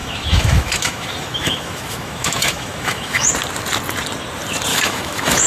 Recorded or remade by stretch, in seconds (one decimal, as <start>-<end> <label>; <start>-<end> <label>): 0.0-3.3 remade; 3.3-4.7 recorded; 4.7-5.5 remade